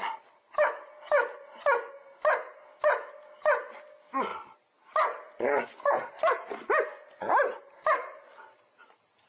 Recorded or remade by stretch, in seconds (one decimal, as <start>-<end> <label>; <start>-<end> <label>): 0.0-9.3 recorded